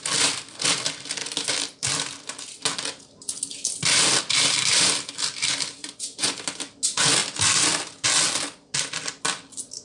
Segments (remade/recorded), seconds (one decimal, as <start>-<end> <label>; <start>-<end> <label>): 0.0-5.8 recorded; 5.8-6.4 remade; 6.4-9.8 recorded